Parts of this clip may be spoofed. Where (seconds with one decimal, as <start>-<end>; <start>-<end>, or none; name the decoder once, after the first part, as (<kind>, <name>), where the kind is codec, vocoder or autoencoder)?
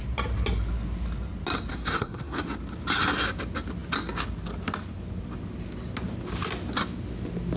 1.7-2.4 (codec, SNAC)